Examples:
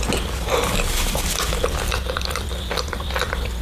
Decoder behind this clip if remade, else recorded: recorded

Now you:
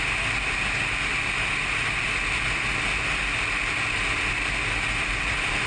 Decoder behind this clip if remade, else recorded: recorded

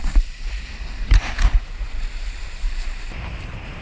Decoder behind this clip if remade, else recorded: remade, vocoder, BigVGAN v2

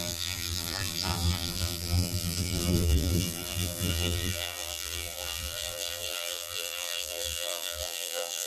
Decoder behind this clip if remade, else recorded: remade, vocoder, BigVGAN v2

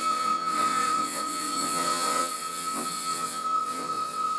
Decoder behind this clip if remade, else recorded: remade, vocoder, WaveNeXt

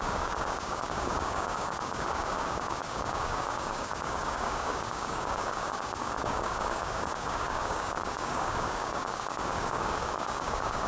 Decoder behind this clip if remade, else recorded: remade, codec, DAC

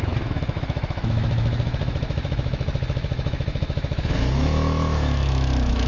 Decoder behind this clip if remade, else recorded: remade, autoencoder, DAC-VAE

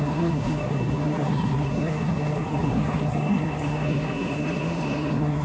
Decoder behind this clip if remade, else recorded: remade, codec, SNAC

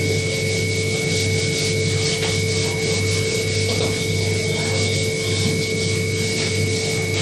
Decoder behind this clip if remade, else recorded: recorded